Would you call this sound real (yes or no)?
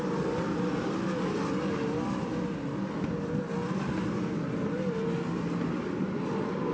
yes